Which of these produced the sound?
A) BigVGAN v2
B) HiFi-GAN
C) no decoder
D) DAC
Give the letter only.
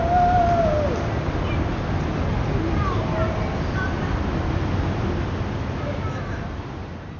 C